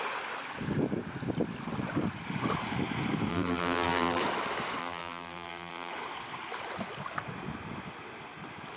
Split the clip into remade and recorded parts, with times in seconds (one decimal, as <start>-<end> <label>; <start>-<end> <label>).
0.0-3.3 recorded; 3.3-4.2 remade; 4.2-4.8 recorded; 4.8-5.9 remade; 5.9-8.8 recorded